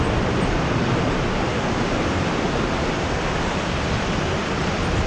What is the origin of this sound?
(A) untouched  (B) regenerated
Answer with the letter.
A